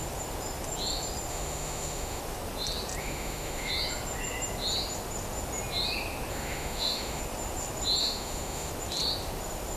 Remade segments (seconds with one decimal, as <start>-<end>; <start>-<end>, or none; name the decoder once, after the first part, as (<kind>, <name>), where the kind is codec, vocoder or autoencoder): 1.3-2.2 (autoencoder, DAC-VAE); 3.0-3.7; 6.3-7.2; 8.0-8.7